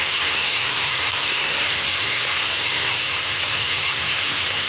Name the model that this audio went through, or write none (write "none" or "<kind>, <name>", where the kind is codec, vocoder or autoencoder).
codec, SNAC